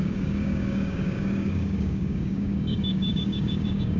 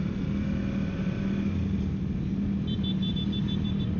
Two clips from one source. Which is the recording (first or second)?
second